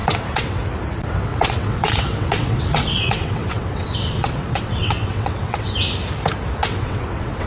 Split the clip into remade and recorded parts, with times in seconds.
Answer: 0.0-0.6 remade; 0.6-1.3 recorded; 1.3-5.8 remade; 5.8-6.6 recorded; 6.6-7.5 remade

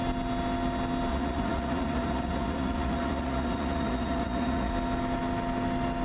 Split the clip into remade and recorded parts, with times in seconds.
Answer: 0.0-1.1 recorded; 1.1-4.7 remade; 4.7-6.0 recorded

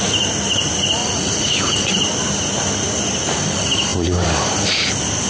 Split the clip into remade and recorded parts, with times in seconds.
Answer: 0.0-1.0 recorded; 1.0-1.9 remade; 1.9-5.3 recorded

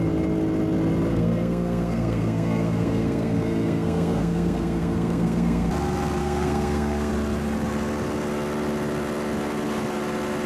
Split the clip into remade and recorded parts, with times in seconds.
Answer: 0.0-1.1 recorded; 1.1-5.7 remade; 5.7-6.2 recorded; 6.2-7.1 remade; 7.1-10.5 recorded